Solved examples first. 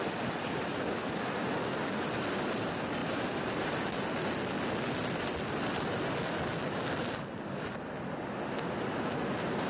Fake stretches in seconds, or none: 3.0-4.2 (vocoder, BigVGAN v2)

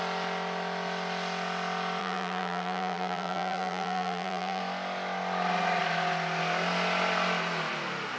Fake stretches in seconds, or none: 2.0-4.6 (vocoder, BigVGAN v2)

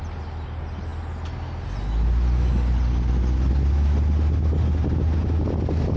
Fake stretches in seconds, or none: none

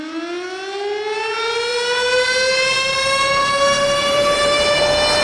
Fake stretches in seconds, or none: 1.7-4.8 (vocoder, BigVGAN v2)

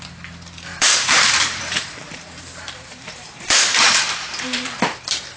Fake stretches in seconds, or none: 0.7-3.9 (vocoder, BigVGAN v2); 4.3-5.4

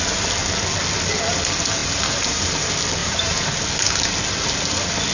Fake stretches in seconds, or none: 1.8-2.6 (vocoder, BigVGAN v2); 3.0-3.5

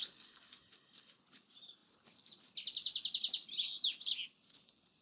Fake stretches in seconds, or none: none

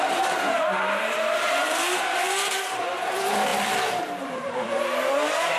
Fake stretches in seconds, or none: 0.0-3.5 (vocoder, BigVGAN v2); 4.0-4.9